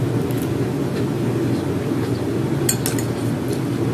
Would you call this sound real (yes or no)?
yes